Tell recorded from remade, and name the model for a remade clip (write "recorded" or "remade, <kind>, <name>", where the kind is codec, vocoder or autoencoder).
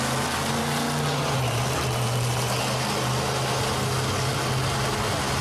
recorded